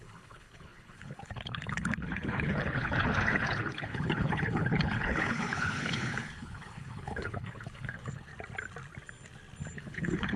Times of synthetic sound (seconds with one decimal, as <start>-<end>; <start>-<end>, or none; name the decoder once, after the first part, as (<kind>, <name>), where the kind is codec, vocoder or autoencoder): 0.0-8.3 (codec, HILCodec); 9.7-10.4